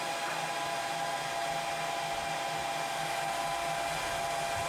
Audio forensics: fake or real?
real